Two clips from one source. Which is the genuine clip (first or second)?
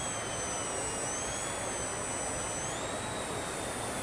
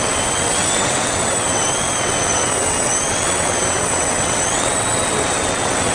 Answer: first